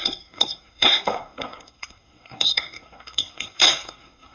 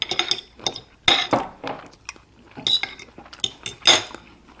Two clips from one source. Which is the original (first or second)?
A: second